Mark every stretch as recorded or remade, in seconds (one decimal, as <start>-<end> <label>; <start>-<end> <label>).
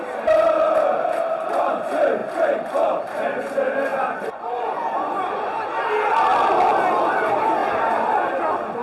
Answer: 0.0-3.9 recorded; 3.9-5.6 remade; 5.6-8.8 recorded